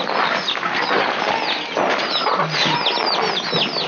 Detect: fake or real real